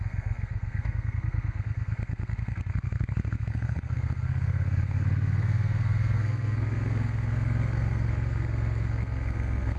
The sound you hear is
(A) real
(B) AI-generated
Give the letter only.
B